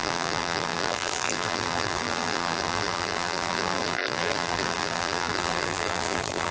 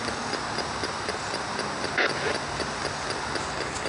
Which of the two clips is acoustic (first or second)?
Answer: second